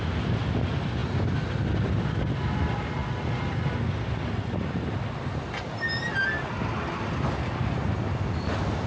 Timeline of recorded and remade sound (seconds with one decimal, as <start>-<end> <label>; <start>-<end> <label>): 0.0-8.9 recorded